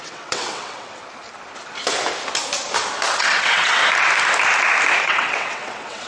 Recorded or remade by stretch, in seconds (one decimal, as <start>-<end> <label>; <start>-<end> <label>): 0.0-1.0 remade; 1.0-3.1 recorded; 3.1-3.8 remade; 3.8-5.0 recorded; 5.0-6.1 remade